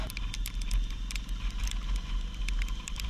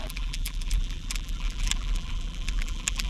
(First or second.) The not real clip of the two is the second